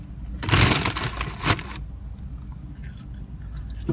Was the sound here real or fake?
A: real